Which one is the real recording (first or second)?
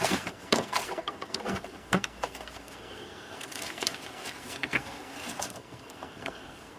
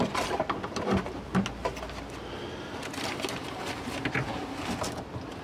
second